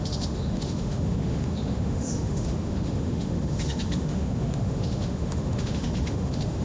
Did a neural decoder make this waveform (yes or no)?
yes